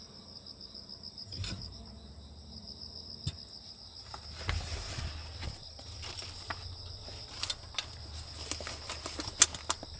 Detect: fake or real real